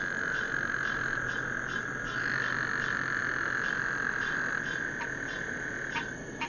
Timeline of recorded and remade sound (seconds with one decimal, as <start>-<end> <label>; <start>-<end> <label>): 0.0-6.5 recorded